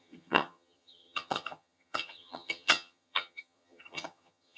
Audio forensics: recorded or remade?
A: remade